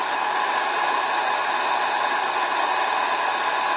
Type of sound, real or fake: real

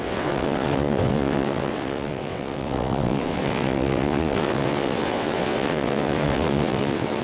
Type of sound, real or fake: fake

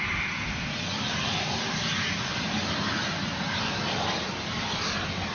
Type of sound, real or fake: real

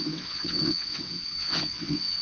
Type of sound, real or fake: fake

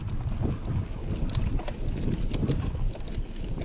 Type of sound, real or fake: real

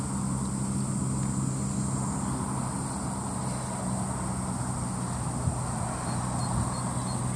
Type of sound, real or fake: real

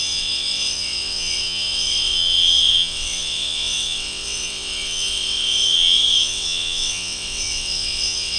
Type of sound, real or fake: fake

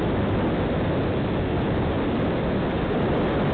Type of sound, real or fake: real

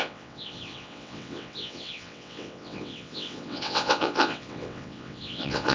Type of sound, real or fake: fake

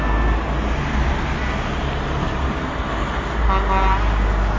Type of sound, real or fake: real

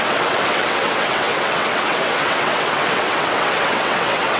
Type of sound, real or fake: fake